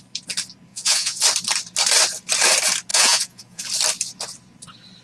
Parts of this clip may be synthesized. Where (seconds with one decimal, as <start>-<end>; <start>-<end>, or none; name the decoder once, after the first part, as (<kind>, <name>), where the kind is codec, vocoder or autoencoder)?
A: 0.7-1.2 (vocoder, Vocos); 2.9-3.6